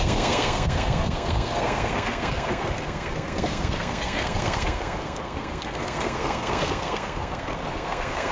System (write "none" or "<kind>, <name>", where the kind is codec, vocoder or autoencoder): codec, SNAC